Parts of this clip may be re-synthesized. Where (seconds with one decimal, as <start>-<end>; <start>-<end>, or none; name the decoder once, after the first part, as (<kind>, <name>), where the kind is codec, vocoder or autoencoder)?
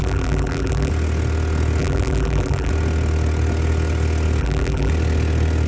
0.0-0.9 (vocoder, BigVGAN v2); 1.8-2.7; 4.4-4.9